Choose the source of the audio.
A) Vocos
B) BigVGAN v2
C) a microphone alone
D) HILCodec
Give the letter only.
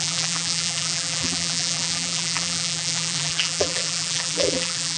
B